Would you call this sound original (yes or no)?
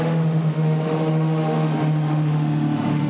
no